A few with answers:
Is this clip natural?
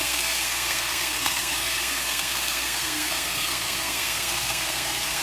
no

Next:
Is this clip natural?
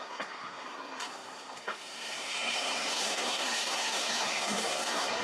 no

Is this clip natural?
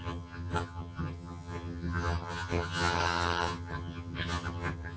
no